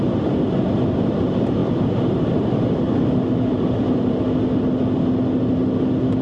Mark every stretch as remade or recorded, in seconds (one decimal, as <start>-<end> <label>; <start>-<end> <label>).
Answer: 0.0-6.2 recorded